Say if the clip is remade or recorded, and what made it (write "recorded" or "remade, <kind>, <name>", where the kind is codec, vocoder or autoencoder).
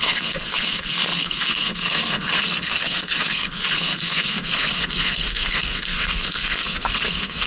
remade, codec, SNAC